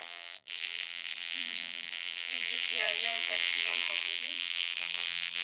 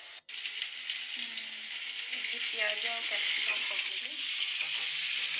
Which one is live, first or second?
second